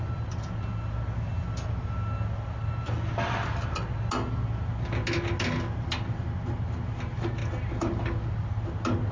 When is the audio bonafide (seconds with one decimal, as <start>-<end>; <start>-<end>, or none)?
0.0-9.1